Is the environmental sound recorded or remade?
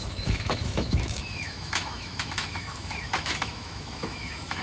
remade